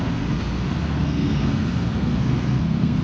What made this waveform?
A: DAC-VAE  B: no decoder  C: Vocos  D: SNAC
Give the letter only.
D